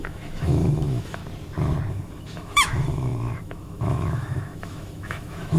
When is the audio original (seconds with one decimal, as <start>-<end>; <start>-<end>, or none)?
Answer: 1.2-1.9